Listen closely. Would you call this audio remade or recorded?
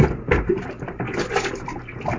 remade